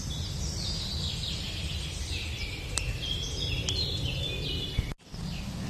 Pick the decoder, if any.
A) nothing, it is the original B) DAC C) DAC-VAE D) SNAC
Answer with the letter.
A